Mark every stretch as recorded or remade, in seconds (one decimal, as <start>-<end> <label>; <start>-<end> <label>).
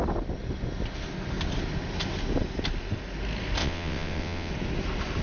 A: 0.0-3.6 recorded; 3.6-4.5 remade; 4.5-5.2 recorded